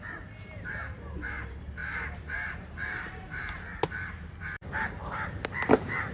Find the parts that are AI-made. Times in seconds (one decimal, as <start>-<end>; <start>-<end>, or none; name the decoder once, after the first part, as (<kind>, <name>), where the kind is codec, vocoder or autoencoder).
0.0-6.1 (vocoder, BigVGAN v2)